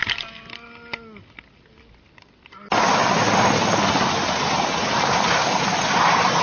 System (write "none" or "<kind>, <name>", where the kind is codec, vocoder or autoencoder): none